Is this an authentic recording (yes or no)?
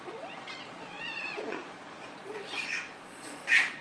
no